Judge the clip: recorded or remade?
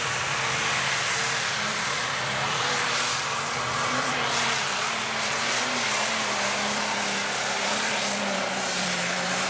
remade